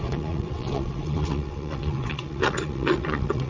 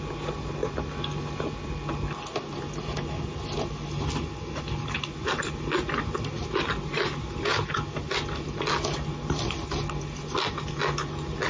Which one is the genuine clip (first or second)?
second